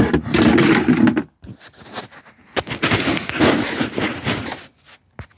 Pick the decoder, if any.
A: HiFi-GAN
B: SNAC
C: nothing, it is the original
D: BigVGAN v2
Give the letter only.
C